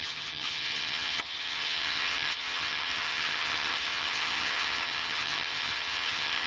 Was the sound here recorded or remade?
remade